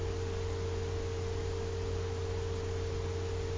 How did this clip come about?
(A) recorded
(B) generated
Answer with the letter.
A